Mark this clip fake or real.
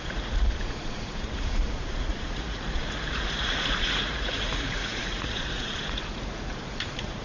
fake